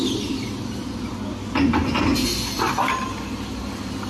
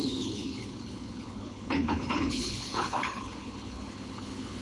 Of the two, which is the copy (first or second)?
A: second